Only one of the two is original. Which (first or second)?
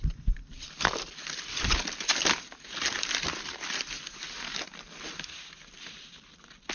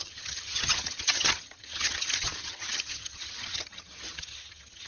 first